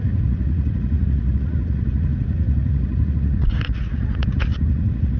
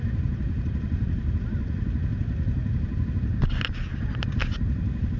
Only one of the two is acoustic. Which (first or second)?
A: second